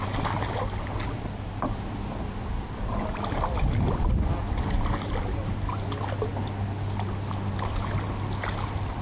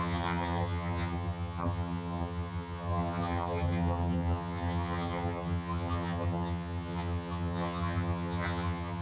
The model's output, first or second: second